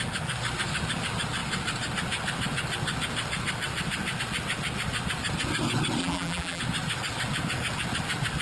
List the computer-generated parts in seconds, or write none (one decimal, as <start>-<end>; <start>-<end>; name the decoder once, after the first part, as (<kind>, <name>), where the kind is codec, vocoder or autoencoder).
6.0-6.6 (vocoder, BigVGAN v2)